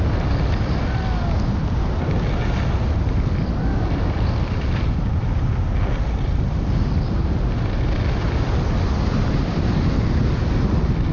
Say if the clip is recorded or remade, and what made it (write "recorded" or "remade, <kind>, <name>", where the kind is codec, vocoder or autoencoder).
recorded